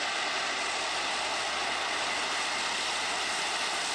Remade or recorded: recorded